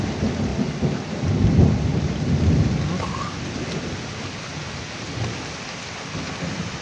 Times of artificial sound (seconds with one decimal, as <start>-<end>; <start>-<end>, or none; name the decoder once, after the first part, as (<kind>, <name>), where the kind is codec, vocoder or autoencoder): none